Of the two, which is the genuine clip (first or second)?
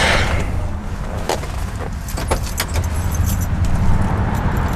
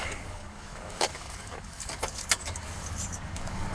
first